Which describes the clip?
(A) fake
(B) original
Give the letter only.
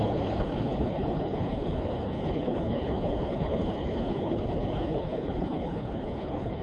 A